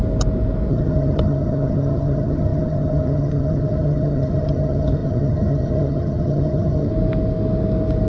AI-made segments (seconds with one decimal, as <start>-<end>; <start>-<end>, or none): 0.7-6.9